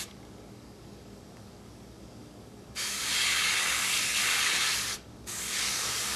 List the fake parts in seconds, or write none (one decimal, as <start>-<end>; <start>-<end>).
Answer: 0.0-6.2